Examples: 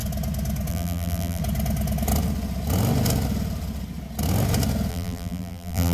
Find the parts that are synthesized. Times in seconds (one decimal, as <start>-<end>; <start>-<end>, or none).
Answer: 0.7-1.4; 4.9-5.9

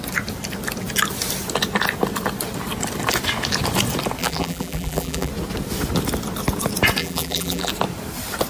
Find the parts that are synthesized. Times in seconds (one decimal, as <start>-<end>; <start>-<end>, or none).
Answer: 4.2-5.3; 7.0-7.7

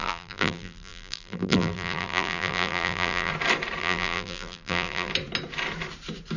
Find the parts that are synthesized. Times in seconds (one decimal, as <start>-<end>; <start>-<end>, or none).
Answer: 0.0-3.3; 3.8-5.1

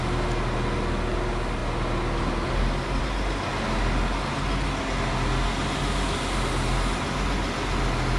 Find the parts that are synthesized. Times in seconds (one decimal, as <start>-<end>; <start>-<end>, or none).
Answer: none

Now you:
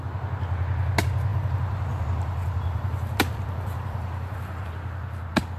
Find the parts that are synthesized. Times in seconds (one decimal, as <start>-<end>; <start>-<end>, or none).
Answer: 1.3-4.7

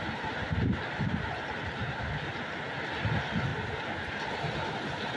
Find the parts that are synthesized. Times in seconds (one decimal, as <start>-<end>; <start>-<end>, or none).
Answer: 1.8-2.6

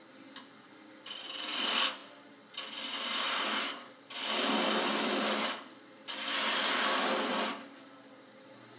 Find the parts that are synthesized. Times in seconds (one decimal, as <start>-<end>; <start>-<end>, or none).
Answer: none